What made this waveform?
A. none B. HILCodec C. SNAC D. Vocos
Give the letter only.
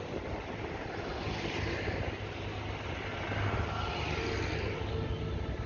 A